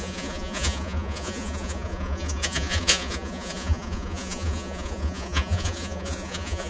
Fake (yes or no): yes